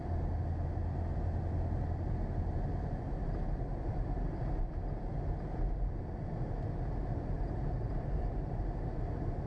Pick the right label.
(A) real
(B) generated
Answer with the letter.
A